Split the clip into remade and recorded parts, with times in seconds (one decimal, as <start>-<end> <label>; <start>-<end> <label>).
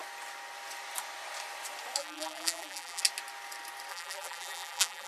0.0-2.0 recorded; 2.0-3.0 remade; 3.0-3.9 recorded; 3.9-5.1 remade